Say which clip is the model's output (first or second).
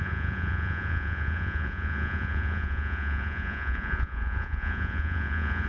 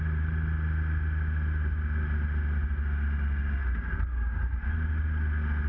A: first